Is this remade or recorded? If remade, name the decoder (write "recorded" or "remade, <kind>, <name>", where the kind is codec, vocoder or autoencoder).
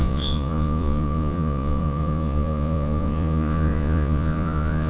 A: remade, vocoder, Vocos